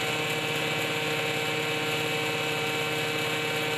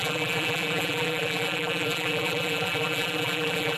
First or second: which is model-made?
second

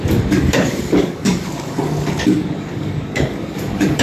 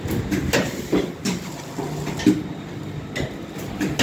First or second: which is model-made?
first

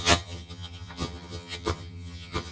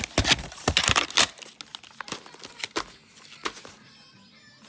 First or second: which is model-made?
first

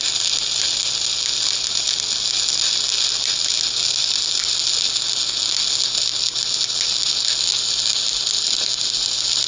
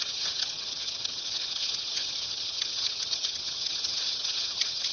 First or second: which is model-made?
second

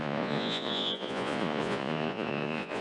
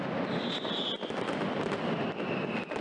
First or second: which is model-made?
first